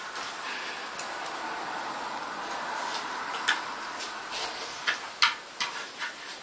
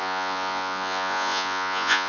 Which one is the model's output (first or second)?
second